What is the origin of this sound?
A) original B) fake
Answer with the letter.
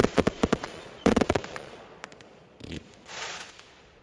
B